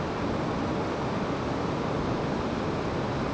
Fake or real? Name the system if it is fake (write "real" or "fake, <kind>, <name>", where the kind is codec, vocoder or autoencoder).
real